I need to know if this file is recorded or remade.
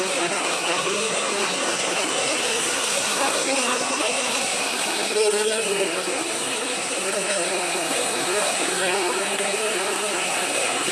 remade